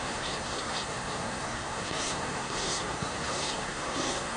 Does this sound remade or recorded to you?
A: remade